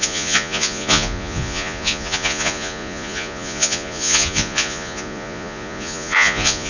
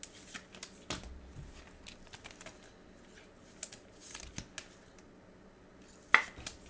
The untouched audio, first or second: second